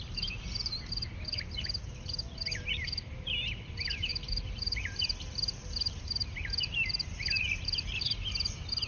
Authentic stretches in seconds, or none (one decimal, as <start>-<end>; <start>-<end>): none